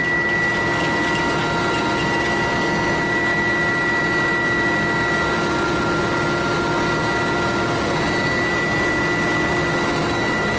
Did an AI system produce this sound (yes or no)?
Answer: no